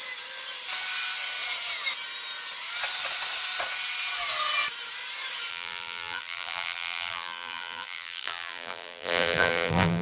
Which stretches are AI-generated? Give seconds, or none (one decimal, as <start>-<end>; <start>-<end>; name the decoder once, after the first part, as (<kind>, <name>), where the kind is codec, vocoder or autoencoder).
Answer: 5.5-10.0 (vocoder, BigVGAN v2)